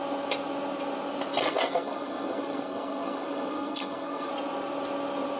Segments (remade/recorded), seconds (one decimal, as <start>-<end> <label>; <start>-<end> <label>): 0.0-1.4 recorded; 1.4-4.3 remade; 4.3-5.4 recorded